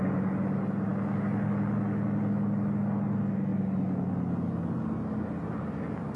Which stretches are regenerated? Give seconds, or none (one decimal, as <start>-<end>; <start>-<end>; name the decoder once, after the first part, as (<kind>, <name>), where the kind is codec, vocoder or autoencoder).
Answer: none